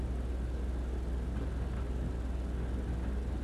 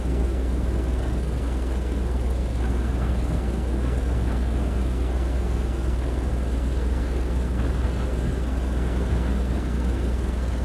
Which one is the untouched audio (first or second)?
first